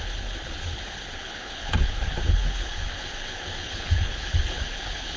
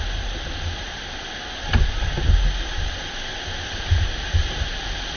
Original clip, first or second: second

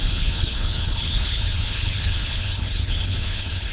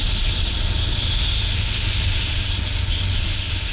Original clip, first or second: second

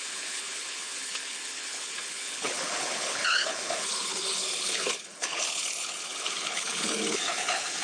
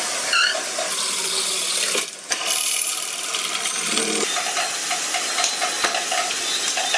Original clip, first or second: second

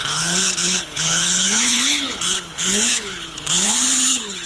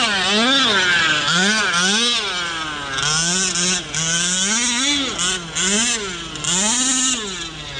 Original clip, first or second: second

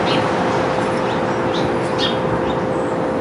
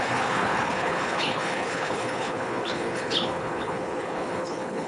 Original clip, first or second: first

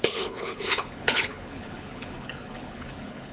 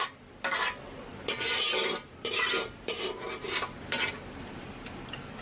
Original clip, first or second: second